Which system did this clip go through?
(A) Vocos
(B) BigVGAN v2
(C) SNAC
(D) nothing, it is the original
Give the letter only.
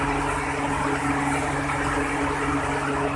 D